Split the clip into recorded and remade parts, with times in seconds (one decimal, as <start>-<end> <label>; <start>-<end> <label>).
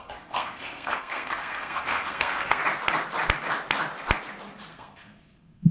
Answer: 0.0-2.6 remade; 2.6-4.7 recorded; 4.7-5.7 remade